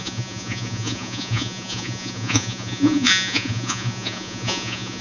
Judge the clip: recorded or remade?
remade